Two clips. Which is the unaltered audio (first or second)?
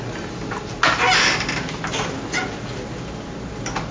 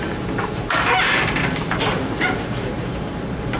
first